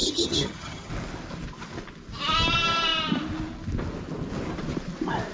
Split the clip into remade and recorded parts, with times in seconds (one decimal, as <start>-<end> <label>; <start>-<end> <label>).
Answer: 0.0-0.9 remade; 0.9-5.3 recorded